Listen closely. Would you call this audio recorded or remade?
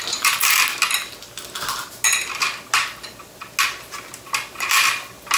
recorded